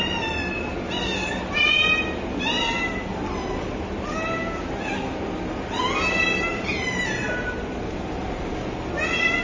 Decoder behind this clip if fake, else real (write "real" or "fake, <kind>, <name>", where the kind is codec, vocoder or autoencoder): real